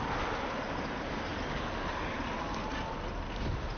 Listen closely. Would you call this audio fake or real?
real